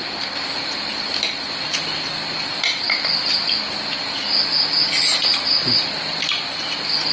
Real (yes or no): yes